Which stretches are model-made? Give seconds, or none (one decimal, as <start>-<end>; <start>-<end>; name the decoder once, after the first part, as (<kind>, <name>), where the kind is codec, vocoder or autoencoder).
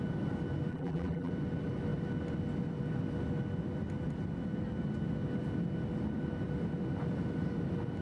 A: 0.7-1.3 (vocoder, BigVGAN v2)